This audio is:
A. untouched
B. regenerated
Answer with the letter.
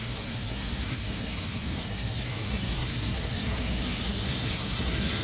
B